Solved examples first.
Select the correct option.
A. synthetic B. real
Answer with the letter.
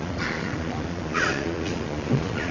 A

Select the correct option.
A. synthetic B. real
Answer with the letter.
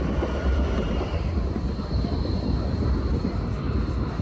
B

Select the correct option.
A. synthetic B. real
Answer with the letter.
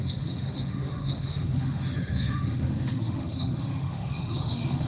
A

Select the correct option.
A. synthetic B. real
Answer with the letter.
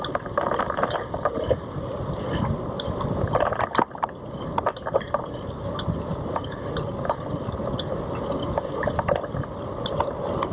B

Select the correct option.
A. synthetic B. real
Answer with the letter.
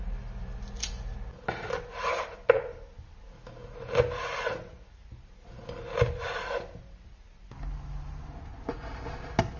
B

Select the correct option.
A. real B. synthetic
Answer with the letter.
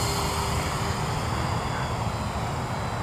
A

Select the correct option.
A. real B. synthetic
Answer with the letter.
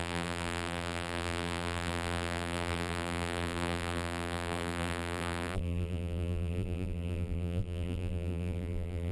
B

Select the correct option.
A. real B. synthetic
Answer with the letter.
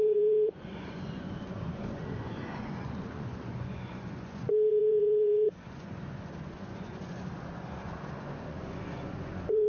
B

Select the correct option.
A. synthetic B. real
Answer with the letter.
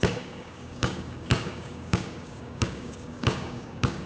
A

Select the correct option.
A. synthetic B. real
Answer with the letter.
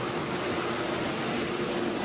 B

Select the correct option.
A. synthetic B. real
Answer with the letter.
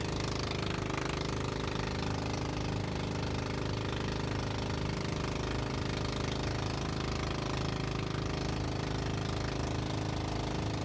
B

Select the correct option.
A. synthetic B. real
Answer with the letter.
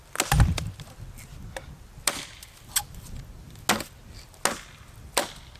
B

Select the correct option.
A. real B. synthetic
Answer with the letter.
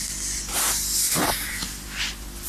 A